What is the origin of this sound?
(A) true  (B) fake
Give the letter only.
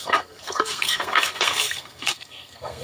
B